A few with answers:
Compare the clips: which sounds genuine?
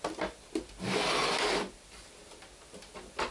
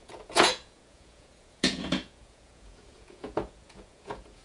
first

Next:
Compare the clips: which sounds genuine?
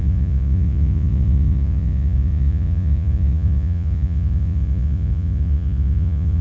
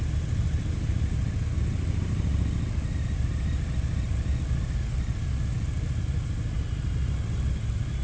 second